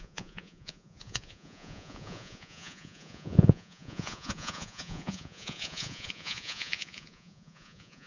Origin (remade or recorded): remade